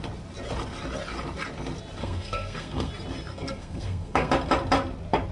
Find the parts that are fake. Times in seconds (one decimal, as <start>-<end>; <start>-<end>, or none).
2.0-2.9; 3.3-4.3